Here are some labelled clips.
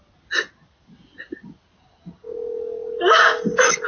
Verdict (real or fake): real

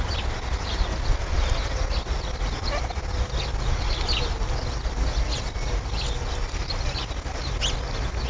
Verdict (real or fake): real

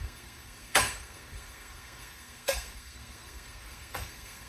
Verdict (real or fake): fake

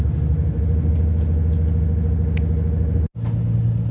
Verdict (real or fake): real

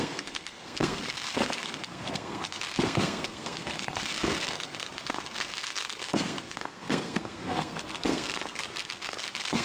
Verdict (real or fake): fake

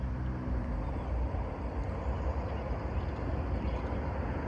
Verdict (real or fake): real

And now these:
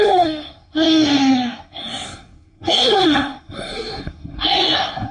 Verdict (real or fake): fake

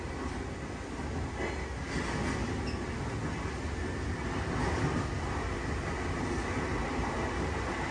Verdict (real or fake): real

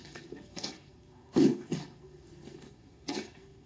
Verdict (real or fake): fake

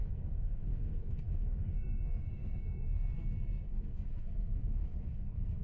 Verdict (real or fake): fake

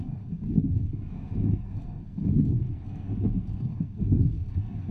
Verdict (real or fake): fake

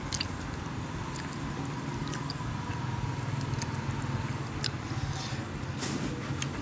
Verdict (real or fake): real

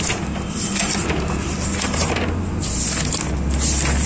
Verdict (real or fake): real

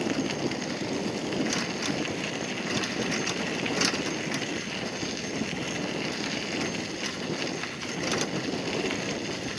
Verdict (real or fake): real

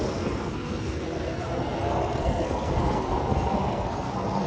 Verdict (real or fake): fake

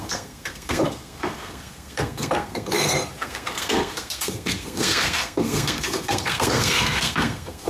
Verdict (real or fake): fake